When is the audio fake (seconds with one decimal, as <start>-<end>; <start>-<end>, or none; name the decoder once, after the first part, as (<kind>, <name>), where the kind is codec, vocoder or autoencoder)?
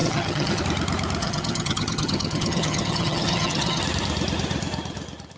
0.0-0.6 (vocoder, HiFi-GAN); 1.2-3.8